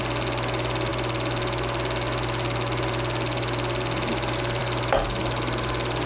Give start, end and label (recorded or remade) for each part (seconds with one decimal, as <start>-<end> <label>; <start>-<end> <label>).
0.0-6.1 recorded